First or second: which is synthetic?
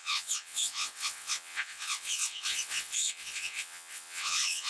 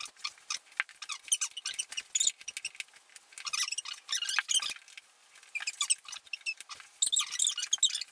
first